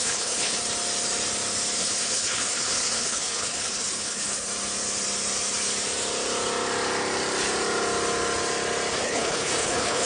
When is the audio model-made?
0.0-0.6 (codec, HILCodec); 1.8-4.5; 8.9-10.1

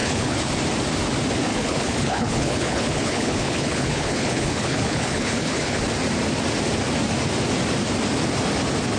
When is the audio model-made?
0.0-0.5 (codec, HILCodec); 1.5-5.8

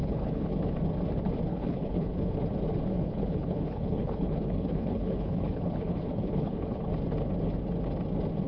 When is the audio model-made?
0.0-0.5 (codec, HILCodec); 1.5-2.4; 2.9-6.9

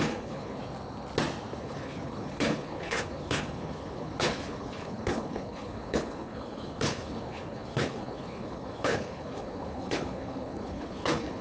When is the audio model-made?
0.0-0.6 (codec, HILCodec); 1.6-11.4

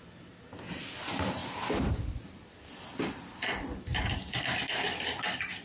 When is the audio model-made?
none

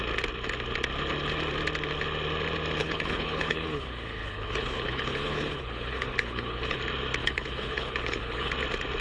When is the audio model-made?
2.8-6.8 (codec, HILCodec); 7.2-8.5

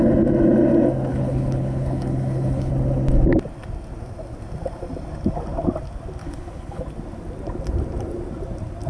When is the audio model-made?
1.1-2.7 (codec, HILCodec); 6.2-6.8

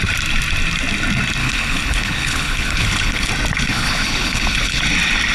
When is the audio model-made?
1.4-3.3 (codec, HILCodec); 3.7-4.8